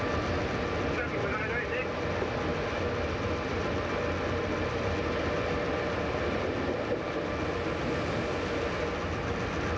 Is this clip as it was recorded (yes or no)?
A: yes